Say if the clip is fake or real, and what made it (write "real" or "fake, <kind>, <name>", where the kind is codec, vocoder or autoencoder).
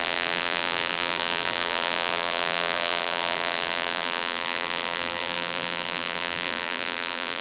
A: fake, vocoder, BigVGAN v2